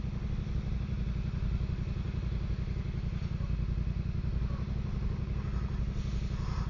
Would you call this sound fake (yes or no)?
no